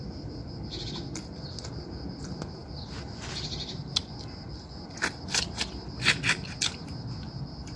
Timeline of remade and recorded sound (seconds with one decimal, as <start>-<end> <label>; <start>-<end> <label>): 0.0-7.8 recorded